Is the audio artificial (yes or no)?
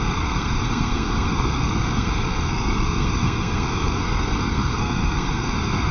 yes